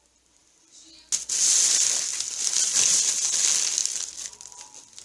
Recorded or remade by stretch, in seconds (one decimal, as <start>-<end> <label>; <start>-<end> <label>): 0.0-5.0 recorded